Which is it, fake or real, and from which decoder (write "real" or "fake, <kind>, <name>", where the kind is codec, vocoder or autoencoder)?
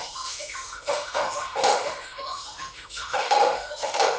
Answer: fake, autoencoder, DAC-VAE